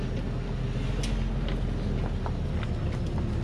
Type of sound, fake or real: real